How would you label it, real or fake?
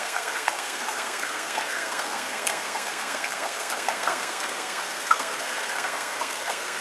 fake